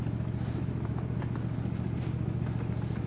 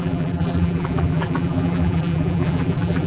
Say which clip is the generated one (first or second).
second